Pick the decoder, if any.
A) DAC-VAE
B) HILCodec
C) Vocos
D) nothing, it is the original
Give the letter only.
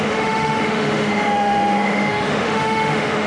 A